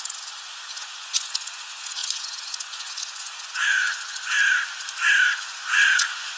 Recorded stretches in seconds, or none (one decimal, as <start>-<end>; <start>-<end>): 4.4-5.4